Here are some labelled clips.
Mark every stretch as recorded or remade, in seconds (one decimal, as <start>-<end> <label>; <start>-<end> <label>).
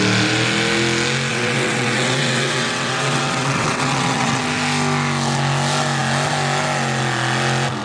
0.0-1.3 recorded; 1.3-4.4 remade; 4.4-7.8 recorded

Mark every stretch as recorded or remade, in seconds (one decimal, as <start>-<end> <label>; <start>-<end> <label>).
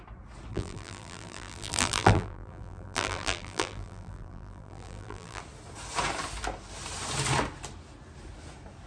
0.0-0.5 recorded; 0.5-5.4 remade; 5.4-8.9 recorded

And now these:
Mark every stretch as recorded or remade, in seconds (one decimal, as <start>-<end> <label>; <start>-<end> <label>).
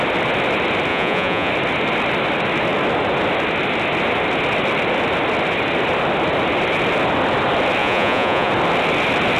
0.0-0.9 recorded; 0.9-1.5 remade; 1.5-7.8 recorded; 7.8-8.5 remade; 8.5-9.4 recorded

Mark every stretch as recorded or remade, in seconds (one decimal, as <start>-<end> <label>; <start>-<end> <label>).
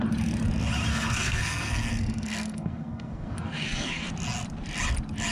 0.0-0.9 recorded; 0.9-4.1 remade; 4.1-5.3 recorded